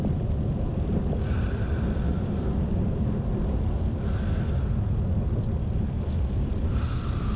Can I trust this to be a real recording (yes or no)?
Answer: no